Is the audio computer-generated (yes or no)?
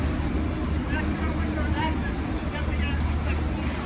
no